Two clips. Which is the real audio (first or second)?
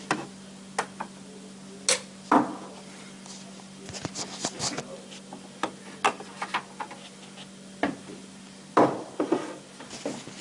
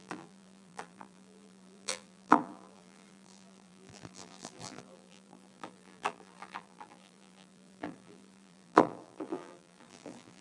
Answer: first